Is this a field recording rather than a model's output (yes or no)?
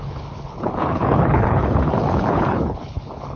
no